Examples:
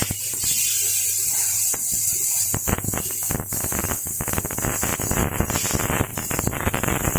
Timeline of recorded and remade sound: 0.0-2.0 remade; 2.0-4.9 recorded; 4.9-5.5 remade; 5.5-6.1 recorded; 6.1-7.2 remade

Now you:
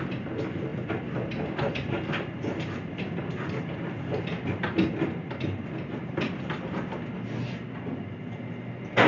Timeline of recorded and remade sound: 0.0-9.1 recorded